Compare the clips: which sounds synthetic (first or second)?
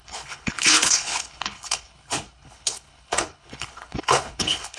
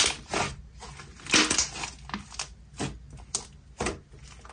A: first